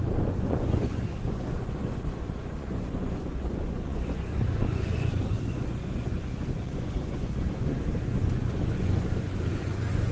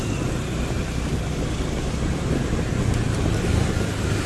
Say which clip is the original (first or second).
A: second